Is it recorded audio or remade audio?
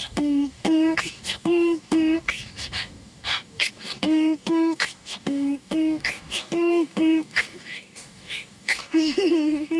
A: remade